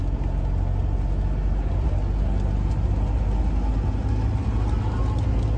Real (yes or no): yes